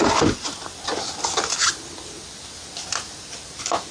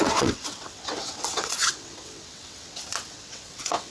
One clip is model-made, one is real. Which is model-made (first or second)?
second